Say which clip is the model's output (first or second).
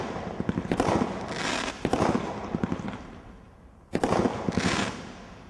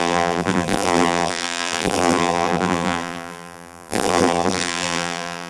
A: second